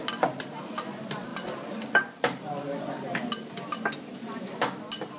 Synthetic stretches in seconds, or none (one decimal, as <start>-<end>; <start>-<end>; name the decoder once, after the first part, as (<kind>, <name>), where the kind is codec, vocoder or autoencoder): none